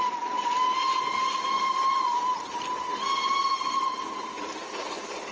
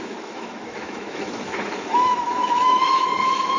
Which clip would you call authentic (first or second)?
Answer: first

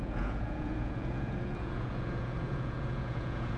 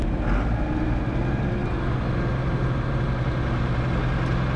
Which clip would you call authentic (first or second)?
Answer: second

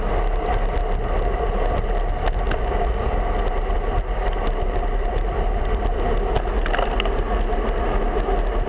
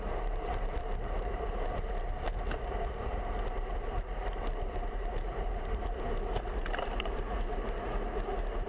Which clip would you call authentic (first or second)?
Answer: first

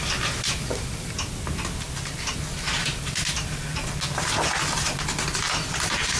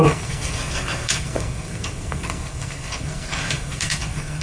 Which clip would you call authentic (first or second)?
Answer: first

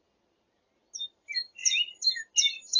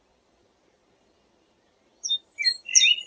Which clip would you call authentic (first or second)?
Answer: first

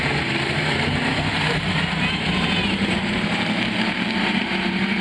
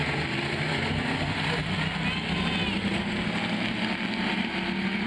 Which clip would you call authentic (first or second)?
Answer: second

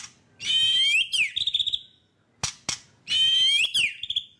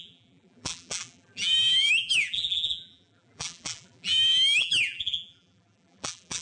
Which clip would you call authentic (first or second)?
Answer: first